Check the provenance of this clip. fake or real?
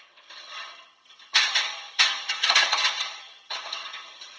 fake